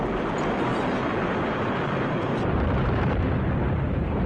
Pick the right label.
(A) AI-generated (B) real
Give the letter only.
B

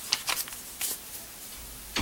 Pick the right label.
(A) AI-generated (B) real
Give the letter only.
A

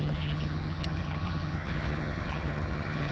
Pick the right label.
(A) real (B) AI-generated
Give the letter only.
B